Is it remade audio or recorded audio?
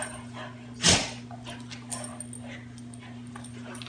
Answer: recorded